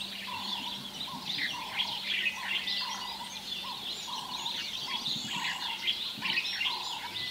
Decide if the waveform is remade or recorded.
recorded